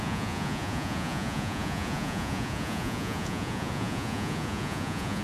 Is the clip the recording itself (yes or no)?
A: no